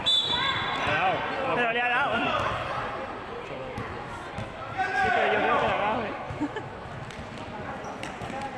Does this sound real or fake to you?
fake